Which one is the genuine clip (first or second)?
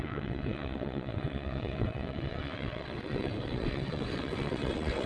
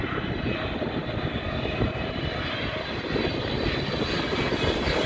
second